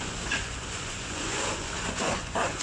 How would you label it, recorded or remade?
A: remade